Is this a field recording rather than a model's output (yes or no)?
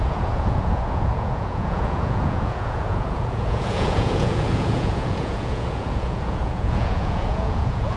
no